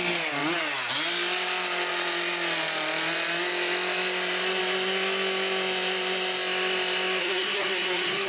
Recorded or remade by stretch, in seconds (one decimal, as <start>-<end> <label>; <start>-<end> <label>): 0.0-7.2 recorded; 7.2-8.3 remade